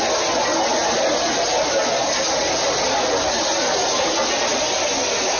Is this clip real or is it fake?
real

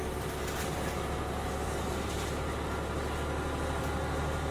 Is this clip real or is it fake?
real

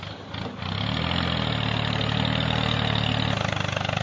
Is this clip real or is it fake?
real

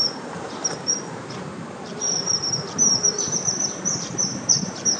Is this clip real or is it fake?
fake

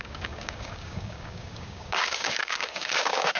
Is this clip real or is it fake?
fake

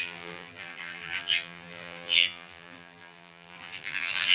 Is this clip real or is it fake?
fake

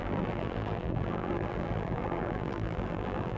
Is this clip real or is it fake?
fake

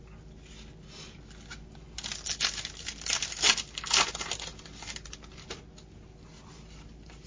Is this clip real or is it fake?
real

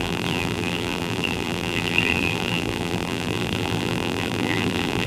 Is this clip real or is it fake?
fake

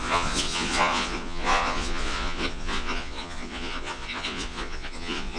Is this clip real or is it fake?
fake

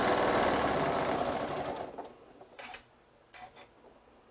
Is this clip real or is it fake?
real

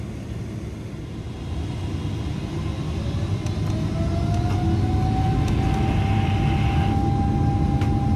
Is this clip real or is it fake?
real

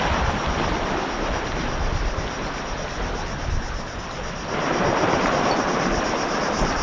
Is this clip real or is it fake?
real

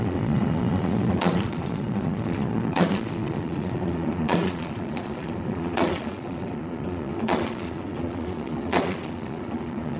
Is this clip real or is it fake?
fake